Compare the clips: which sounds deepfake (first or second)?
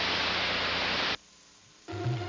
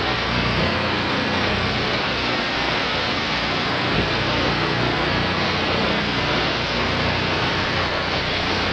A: second